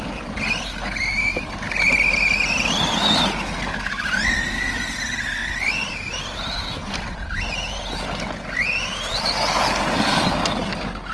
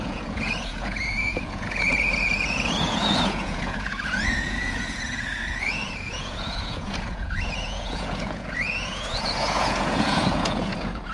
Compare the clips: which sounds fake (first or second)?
second